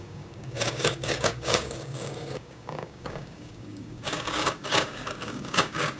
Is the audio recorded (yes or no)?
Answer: no